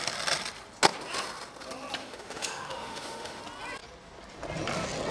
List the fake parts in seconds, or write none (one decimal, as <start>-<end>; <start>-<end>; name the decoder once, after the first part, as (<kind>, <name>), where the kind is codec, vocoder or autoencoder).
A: 2.0-3.4 (autoencoder, DAC-VAE)